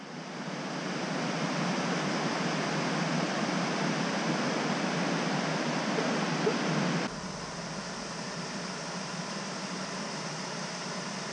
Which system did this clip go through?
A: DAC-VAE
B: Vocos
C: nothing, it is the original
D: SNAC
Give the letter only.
C